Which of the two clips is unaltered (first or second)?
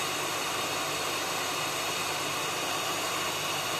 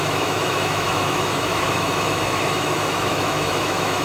first